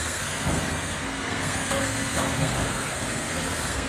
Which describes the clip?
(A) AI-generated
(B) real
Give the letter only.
A